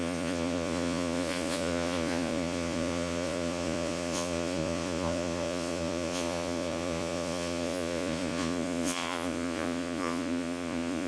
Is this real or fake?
fake